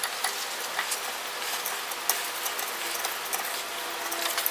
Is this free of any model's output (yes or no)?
yes